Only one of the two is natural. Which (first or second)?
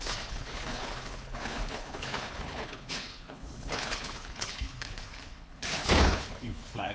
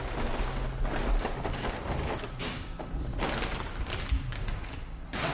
second